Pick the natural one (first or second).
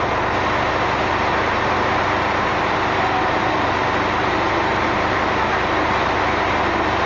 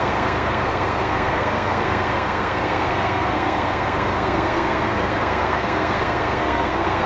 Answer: first